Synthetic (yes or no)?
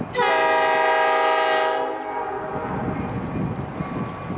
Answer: no